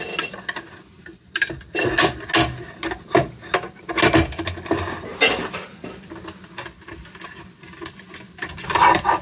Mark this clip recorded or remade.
recorded